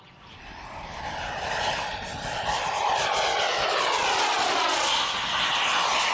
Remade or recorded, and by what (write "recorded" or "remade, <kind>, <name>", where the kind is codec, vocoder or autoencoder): recorded